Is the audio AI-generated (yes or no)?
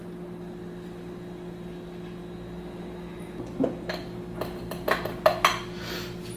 no